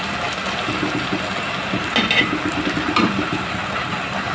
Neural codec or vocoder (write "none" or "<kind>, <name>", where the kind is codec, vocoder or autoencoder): none